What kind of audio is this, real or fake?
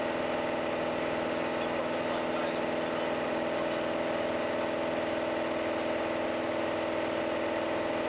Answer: real